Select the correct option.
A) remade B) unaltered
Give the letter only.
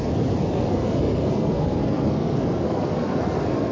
A